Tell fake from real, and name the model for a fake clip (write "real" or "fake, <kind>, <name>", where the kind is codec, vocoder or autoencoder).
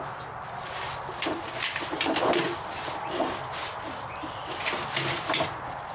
real